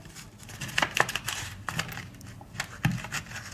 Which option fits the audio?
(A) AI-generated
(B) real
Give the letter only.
B